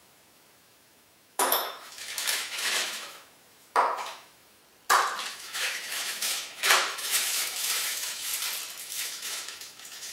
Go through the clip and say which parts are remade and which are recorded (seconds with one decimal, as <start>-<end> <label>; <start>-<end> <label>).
0.0-4.6 remade; 4.6-5.3 recorded; 5.3-8.3 remade; 8.3-8.8 recorded; 8.8-10.1 remade